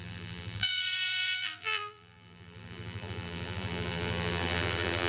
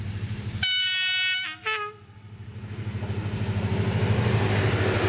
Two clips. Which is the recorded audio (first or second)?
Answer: second